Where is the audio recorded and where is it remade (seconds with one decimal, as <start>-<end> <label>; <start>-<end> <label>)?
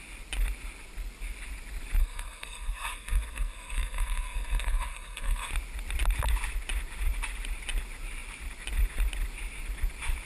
0.0-2.0 recorded; 2.0-5.5 remade; 5.5-10.3 recorded